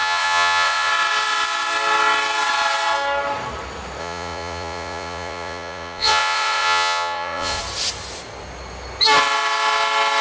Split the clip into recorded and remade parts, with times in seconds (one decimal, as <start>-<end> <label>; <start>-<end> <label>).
0.0-0.9 remade; 0.9-4.0 recorded; 4.0-7.6 remade; 7.6-10.2 recorded

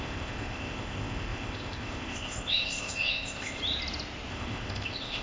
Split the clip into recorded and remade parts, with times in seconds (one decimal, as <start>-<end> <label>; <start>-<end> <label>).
0.0-3.6 remade; 3.6-4.3 recorded; 4.3-5.2 remade

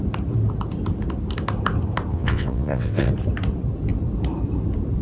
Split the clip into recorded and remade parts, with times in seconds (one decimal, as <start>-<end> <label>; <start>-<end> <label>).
0.0-2.1 recorded; 2.1-3.1 remade; 3.1-5.0 recorded

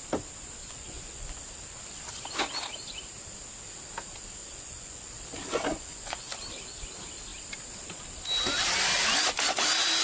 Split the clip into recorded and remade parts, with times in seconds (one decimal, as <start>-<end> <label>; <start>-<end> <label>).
0.0-0.6 recorded; 0.6-1.4 remade; 1.4-4.4 recorded; 4.4-5.1 remade; 5.1-5.7 recorded; 5.7-6.4 remade; 6.4-10.0 recorded

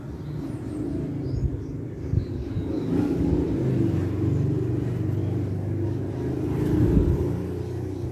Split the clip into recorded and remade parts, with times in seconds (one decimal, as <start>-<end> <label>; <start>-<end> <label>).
0.0-1.5 recorded; 1.5-3.3 remade; 3.3-5.2 recorded; 5.2-6.0 remade; 6.0-8.1 recorded

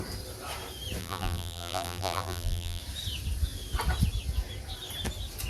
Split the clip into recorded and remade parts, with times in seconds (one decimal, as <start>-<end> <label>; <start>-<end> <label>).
0.0-1.0 recorded; 1.0-2.8 remade; 2.8-5.5 recorded

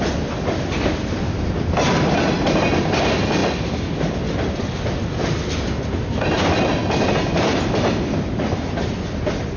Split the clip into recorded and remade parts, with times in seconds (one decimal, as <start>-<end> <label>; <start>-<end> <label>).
0.0-9.6 recorded